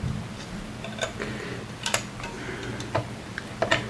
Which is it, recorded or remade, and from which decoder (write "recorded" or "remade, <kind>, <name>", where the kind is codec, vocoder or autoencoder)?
recorded